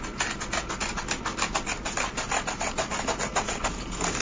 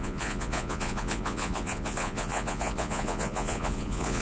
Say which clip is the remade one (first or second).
second